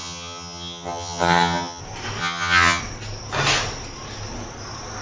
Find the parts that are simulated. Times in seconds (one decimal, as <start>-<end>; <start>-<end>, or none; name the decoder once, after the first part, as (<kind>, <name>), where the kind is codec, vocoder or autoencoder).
0.0-1.8 (vocoder, HiFi-GAN); 2.2-2.8